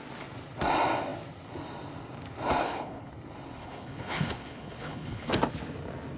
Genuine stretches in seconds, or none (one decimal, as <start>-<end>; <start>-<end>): 0.0-2.6; 3.1-3.6; 5.3-6.2